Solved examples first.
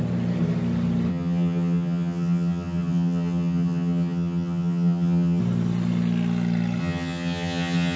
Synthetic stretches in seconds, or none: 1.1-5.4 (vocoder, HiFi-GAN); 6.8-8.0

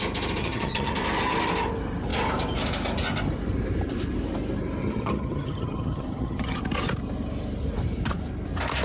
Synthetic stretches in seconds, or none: 0.4-0.9 (vocoder, HiFi-GAN); 4.8-6.6

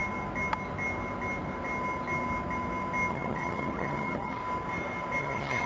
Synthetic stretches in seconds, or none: 3.1-4.4 (vocoder, HiFi-GAN); 5.2-5.7

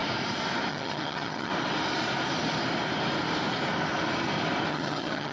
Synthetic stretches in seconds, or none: 0.7-1.5 (vocoder, HiFi-GAN); 4.7-5.3

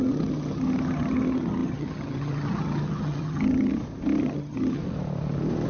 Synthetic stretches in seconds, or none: 0.0-3.7 (vocoder, HiFi-GAN); 4.2-4.8

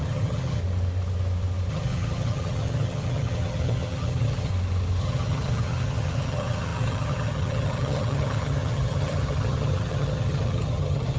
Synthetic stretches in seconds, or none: 0.0-0.6 (vocoder, HiFi-GAN); 1.7-4.5; 5.0-11.2

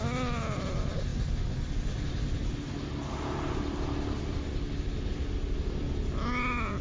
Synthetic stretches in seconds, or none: none